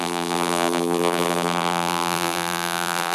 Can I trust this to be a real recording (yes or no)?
no